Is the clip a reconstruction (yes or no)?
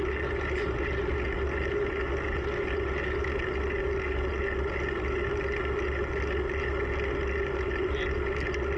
no